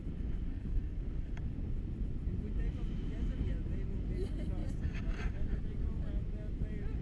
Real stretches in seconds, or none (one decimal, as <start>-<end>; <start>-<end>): 0.0-0.5; 1.3-7.0